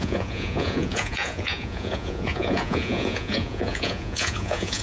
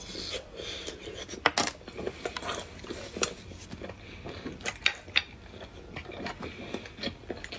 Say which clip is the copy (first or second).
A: first